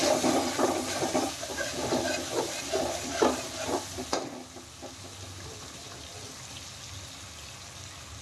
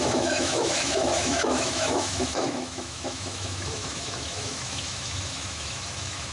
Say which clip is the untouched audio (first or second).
first